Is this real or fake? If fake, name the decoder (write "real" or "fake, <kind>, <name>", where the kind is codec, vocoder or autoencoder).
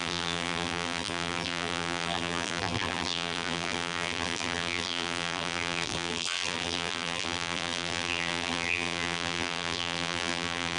fake, vocoder, BigVGAN v2